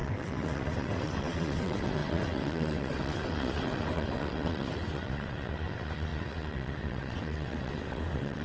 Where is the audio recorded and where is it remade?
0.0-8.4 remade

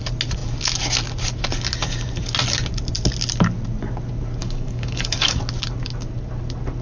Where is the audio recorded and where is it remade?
0.0-4.4 recorded; 4.4-5.4 remade; 5.4-6.8 recorded

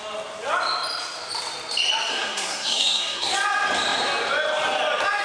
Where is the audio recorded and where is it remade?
0.0-2.1 recorded; 2.1-3.3 remade; 3.3-5.2 recorded

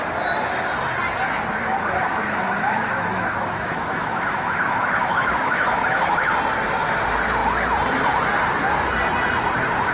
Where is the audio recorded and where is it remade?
0.0-2.0 recorded; 2.0-6.3 remade; 6.3-9.9 recorded

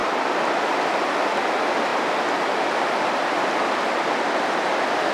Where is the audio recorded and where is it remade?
0.0-5.1 recorded